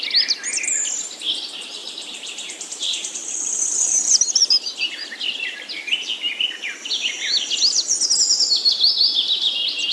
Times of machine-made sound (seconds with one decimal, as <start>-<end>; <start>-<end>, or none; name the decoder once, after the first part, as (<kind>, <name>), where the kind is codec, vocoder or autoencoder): 1.8-4.2 (vocoder, BigVGAN v2)